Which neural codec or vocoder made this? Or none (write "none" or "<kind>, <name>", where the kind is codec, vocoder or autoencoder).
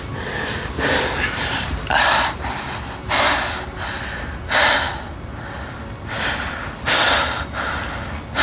none